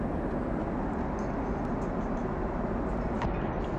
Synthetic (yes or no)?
no